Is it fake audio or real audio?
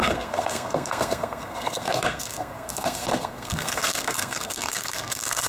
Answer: fake